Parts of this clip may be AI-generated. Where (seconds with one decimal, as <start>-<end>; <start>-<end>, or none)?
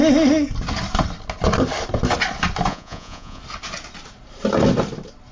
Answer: 2.7-3.4